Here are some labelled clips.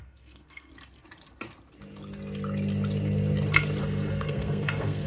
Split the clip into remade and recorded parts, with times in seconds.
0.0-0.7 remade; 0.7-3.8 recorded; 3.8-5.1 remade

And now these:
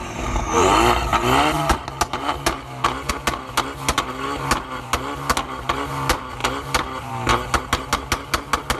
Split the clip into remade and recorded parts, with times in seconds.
0.0-6.4 recorded; 6.4-7.1 remade; 7.1-8.8 recorded

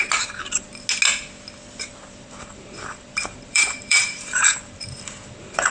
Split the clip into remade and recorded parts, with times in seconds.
0.0-0.7 remade; 0.7-1.8 recorded; 1.8-5.7 remade